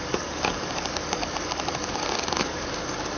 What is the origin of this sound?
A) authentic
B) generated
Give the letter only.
B